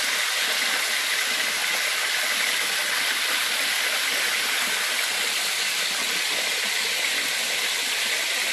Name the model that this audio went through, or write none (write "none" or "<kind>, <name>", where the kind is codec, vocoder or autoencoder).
none